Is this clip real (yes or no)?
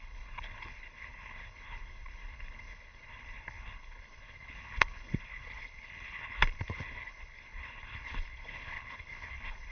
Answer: no